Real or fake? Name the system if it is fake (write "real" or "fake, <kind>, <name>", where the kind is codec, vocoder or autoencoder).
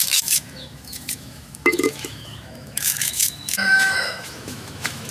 fake, autoencoder, DAC-VAE